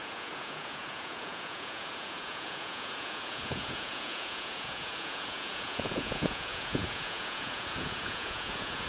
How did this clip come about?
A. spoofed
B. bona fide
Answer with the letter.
A